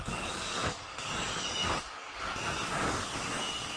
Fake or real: fake